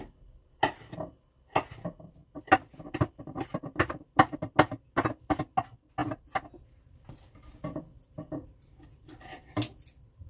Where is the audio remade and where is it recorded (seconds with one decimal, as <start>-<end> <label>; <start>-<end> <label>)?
0.0-10.3 recorded